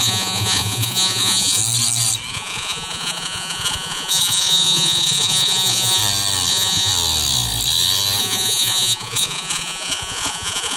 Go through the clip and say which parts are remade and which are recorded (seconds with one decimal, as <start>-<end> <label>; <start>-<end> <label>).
0.0-1.6 remade; 1.6-2.3 recorded; 2.3-6.0 remade; 6.0-6.5 recorded; 6.5-6.9 remade; 6.9-8.2 recorded; 8.2-10.8 remade